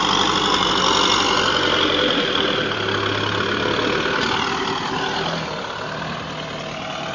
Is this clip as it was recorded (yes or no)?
yes